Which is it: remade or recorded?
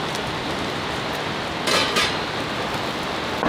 recorded